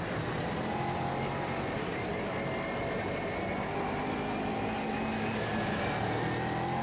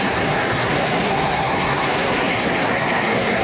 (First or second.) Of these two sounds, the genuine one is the first